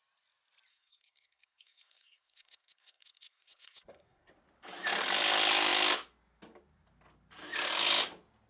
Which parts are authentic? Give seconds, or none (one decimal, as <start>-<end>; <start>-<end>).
0.0-0.7; 4.3-8.5